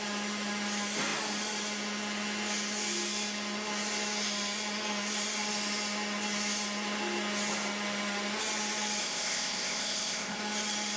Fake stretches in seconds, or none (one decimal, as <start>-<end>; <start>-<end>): 9.0-10.4